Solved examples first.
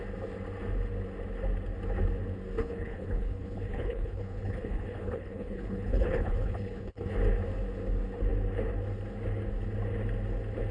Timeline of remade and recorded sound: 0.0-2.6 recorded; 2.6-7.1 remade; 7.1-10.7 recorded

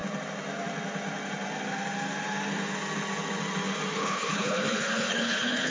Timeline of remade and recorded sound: 0.0-3.9 recorded; 3.9-5.7 remade

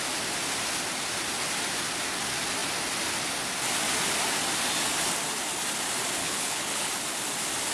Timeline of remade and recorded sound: 0.0-6.2 recorded; 6.2-6.9 remade; 6.9-7.7 recorded

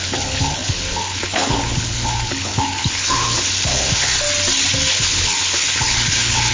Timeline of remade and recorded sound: 0.0-4.1 remade; 4.1-4.9 recorded; 4.9-6.5 remade

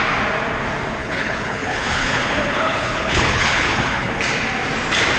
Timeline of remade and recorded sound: 0.0-1.0 recorded; 1.0-4.1 remade; 4.1-5.2 recorded

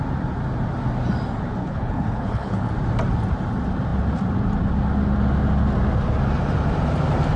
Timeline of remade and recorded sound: 0.0-1.6 recorded; 1.6-2.7 remade; 2.7-7.4 recorded

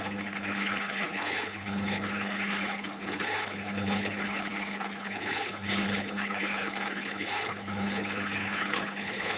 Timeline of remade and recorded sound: 0.0-9.4 remade

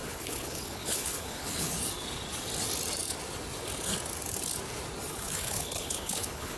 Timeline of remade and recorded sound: 0.0-1.7 remade; 1.7-5.1 recorded; 5.1-6.6 remade